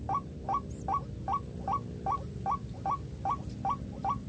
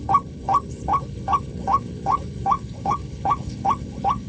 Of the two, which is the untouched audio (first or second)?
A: first